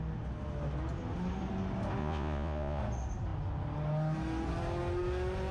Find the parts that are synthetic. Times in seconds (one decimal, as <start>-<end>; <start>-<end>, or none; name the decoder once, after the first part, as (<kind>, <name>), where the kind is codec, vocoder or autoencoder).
2.0-2.8 (vocoder, Vocos)